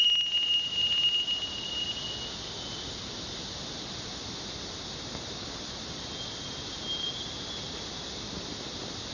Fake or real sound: real